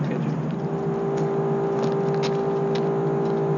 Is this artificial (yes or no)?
no